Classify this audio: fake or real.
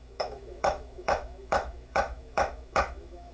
fake